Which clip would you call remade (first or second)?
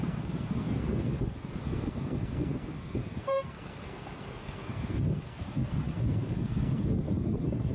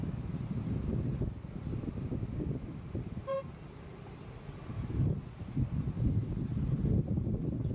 first